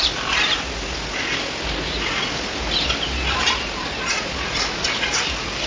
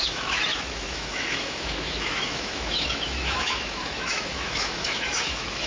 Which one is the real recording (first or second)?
first